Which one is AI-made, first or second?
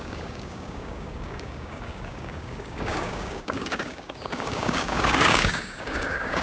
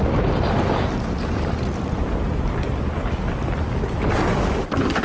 first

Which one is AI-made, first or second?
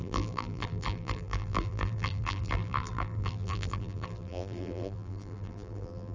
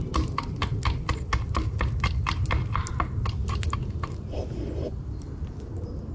first